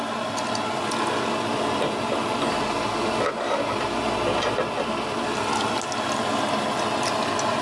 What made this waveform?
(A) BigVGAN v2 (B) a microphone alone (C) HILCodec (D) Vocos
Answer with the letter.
B